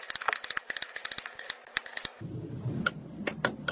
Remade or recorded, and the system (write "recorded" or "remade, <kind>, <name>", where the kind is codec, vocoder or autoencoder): recorded